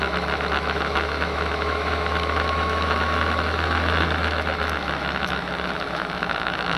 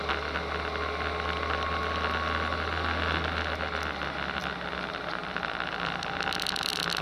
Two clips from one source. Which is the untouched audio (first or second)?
second